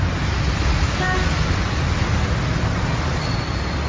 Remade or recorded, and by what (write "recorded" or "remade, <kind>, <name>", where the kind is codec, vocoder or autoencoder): recorded